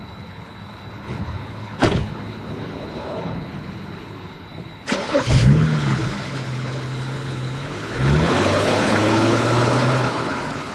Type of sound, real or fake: fake